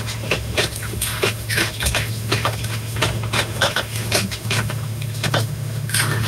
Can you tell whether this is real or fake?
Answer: fake